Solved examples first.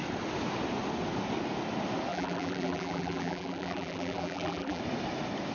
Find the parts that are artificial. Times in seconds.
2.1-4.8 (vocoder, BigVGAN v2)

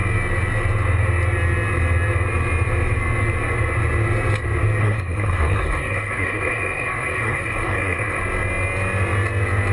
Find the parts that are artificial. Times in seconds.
4.8-8.2 (codec, SNAC)

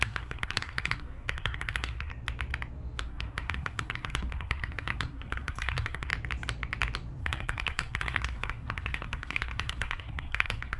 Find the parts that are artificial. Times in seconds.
0.0-2.1 (codec, SNAC); 3.0-6.1; 7.2-10.8

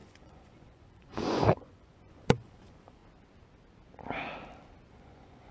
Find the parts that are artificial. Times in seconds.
0.0-3.0 (vocoder, Vocos); 4.9-5.5

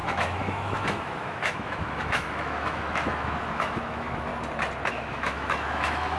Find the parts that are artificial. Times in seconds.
0.0-4.3 (autoencoder, DAC-VAE); 4.9-6.2

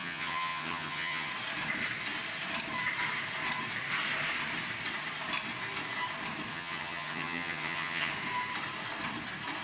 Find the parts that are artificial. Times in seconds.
0.0-1.3 (vocoder, HiFi-GAN); 6.5-8.1

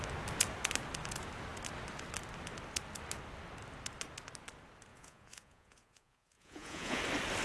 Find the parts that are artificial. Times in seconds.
4.9-7.0 (vocoder, Vocos)